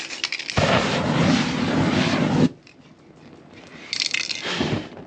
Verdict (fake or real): real